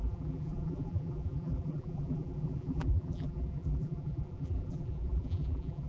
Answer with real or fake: fake